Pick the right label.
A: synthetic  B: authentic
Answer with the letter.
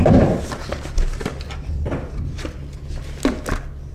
B